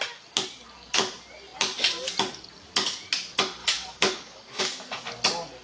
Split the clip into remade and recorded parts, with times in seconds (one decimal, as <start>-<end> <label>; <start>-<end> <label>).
0.0-3.6 recorded; 3.6-4.6 remade; 4.6-5.6 recorded